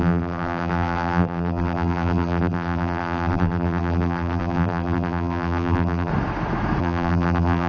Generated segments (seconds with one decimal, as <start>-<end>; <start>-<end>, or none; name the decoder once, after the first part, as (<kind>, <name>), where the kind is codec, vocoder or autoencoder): 0.0-6.1 (vocoder, BigVGAN v2); 6.8-7.7